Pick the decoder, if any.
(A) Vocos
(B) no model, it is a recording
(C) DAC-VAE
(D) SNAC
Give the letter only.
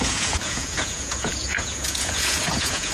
A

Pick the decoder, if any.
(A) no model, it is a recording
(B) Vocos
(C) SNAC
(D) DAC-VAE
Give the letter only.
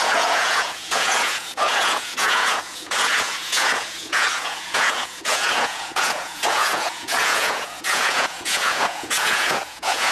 B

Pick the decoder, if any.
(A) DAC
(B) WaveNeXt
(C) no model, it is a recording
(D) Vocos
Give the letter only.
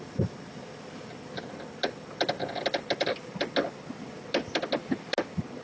C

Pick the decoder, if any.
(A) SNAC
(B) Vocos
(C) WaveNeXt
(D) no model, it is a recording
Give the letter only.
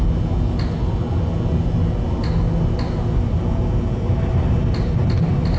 D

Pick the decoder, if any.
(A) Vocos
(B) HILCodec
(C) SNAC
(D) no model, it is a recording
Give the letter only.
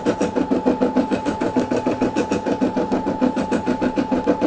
D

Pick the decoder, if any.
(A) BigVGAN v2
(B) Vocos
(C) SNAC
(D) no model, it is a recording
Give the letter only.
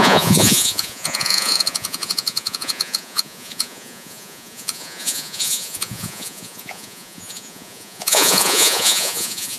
B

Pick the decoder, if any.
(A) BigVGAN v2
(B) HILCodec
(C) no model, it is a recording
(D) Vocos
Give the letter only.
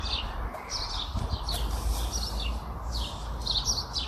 C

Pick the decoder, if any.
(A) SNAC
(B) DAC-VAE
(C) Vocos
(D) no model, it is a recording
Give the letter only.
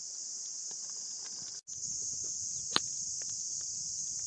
D